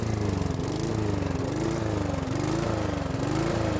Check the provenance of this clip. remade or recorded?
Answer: recorded